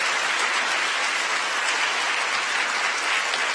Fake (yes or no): no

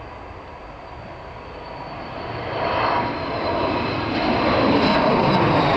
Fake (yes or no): no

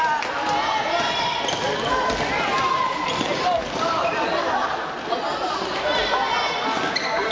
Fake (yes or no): no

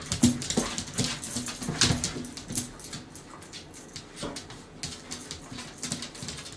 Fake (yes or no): no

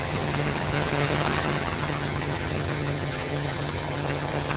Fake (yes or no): yes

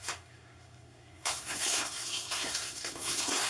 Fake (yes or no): yes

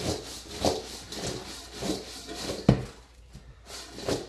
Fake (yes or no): no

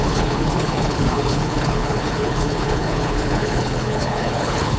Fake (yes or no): yes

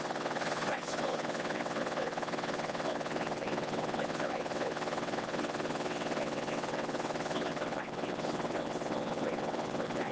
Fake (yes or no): yes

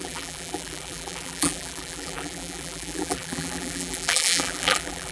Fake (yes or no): yes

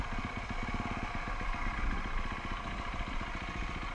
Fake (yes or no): no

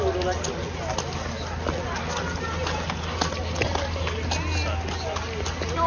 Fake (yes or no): no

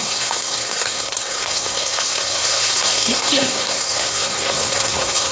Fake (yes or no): yes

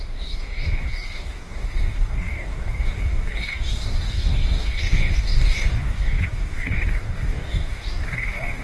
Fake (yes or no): yes